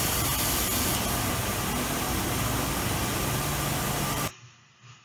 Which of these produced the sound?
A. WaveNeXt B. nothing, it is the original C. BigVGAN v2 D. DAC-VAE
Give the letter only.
B